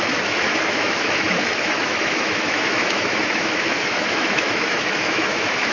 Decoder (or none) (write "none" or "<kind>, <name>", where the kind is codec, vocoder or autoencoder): autoencoder, DAC-VAE